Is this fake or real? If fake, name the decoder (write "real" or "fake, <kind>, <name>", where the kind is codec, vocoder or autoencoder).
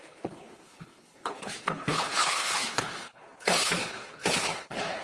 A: fake, codec, HILCodec